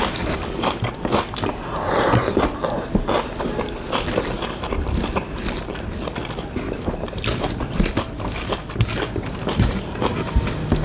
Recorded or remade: recorded